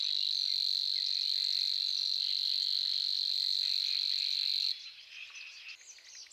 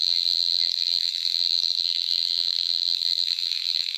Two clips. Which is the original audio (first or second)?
first